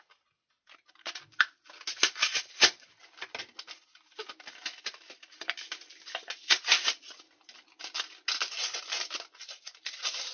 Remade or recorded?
recorded